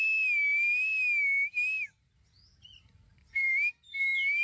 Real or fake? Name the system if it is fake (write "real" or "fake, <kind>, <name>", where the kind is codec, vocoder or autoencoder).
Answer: real